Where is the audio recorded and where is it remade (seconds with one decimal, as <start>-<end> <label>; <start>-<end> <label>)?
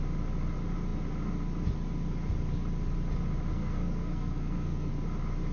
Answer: 0.0-3.5 recorded; 3.5-4.9 remade; 4.9-5.5 recorded